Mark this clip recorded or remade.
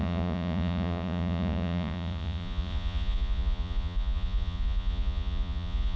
remade